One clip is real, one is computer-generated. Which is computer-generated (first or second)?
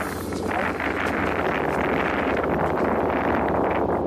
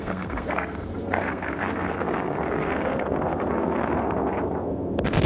second